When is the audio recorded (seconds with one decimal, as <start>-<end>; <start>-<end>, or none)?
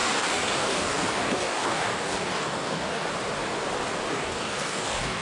3.1-4.1